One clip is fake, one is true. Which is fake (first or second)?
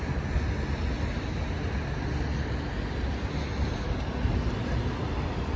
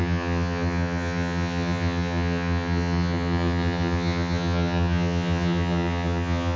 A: second